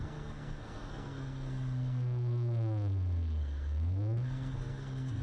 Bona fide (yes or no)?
no